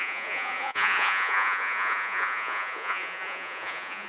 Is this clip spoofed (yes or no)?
yes